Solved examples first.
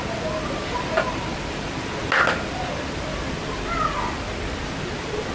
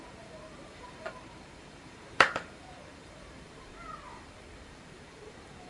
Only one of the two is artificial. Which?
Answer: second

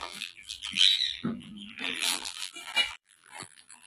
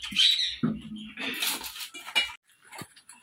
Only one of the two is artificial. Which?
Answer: first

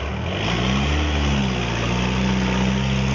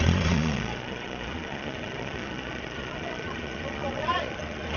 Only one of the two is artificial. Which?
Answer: second